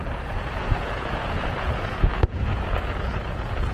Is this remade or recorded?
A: remade